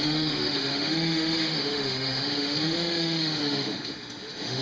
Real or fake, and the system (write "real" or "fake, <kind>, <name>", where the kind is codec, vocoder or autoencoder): fake, autoencoder, DAC-VAE